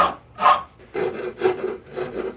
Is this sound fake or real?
real